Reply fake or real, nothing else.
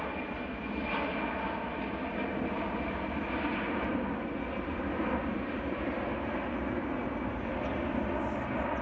real